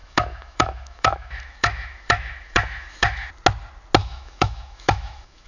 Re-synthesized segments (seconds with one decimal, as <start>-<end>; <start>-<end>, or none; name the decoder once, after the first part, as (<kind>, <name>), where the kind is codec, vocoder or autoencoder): 0.0-3.3 (autoencoder, DAC-VAE); 4.0-5.5